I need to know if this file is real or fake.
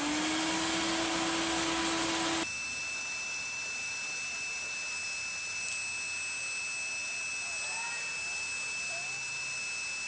real